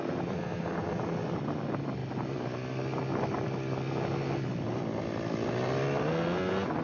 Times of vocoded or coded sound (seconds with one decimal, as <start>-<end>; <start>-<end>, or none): none